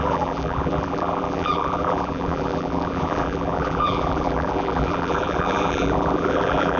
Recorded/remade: remade